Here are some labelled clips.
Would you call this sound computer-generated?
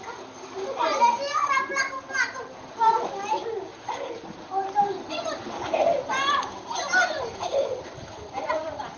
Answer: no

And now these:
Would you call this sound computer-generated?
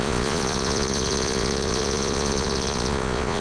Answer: yes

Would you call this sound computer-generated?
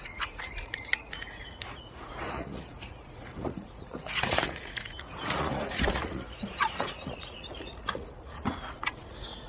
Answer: yes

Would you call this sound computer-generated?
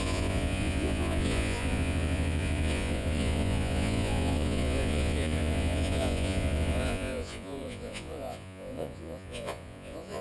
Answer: yes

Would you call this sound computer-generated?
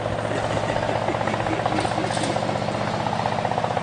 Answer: no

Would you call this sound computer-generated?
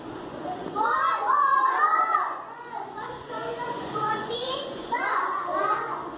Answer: yes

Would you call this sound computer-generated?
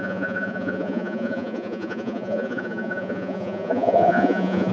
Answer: yes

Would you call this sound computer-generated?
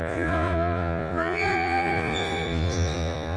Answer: yes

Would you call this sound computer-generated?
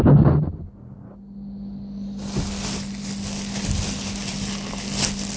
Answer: no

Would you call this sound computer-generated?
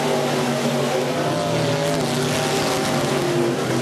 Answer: no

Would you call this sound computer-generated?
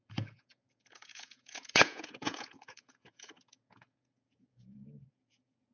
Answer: yes